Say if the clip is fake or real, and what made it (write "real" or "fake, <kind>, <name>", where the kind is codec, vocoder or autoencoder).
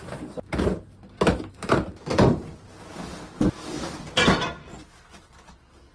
real